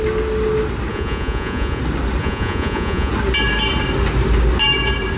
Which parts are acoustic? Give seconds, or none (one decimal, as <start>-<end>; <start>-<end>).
0.0-0.9; 1.8-2.2; 3.1-5.2